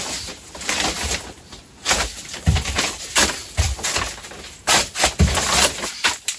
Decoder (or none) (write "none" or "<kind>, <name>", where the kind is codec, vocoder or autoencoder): none